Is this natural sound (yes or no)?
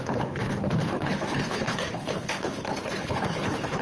no